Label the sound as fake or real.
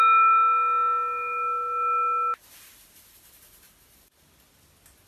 real